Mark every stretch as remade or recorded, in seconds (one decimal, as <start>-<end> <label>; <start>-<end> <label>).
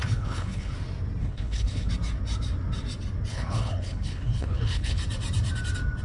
0.0-0.7 remade; 0.7-1.2 recorded; 1.2-1.9 remade; 1.9-3.3 recorded; 3.3-5.0 remade; 5.0-6.0 recorded